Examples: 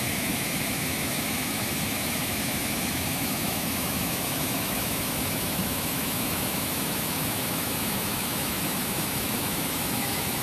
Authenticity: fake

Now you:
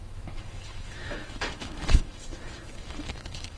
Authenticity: fake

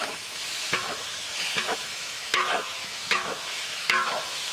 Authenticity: fake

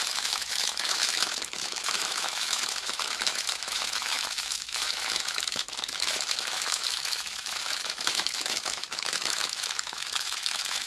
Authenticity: fake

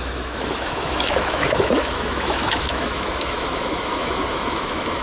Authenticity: fake